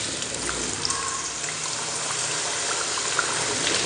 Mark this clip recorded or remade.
recorded